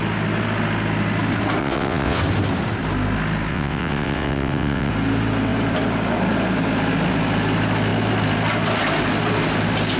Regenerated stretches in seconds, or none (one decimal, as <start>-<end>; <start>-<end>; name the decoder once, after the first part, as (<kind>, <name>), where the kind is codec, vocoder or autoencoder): 1.6-2.2 (vocoder, WaveNeXt); 3.5-4.9